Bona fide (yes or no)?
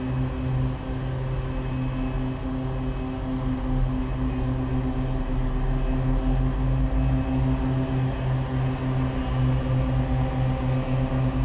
yes